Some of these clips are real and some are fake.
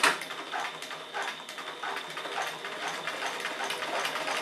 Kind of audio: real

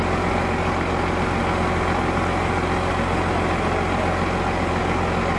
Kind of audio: real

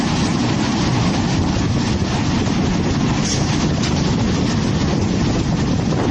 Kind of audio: real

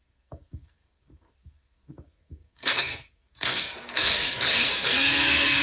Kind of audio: fake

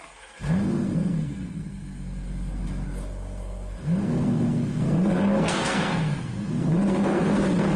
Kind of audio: fake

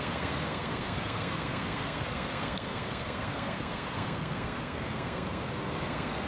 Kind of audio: fake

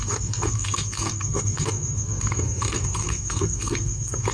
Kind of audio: fake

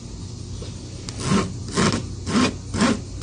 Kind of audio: real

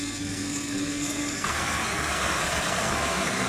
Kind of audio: fake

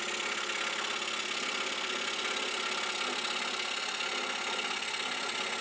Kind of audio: real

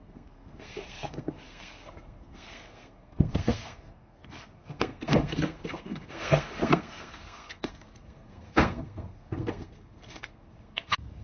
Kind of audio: fake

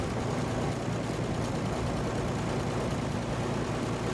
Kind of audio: real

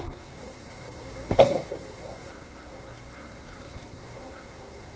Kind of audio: fake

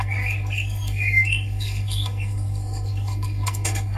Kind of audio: fake